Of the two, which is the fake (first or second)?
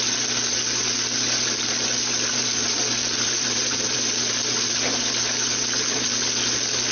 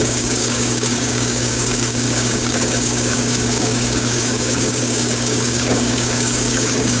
second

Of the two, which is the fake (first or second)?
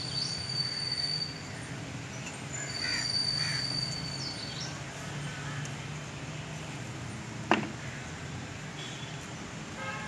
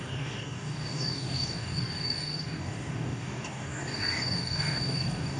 second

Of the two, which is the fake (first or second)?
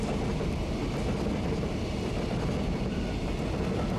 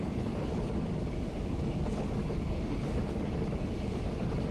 second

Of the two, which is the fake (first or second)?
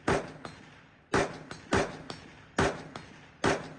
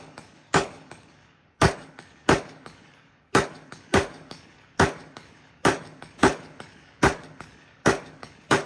second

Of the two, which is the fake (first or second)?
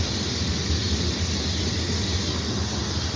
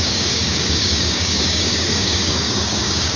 second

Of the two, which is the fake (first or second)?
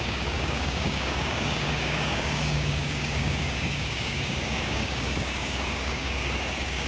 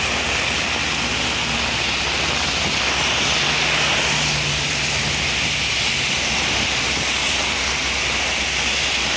first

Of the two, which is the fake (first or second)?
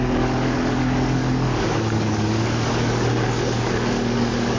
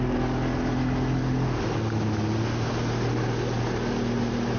first